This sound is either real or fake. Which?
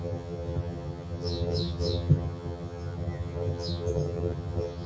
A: fake